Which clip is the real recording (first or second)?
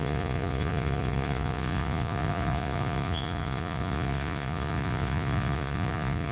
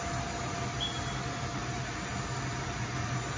second